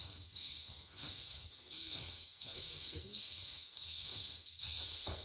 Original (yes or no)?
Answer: no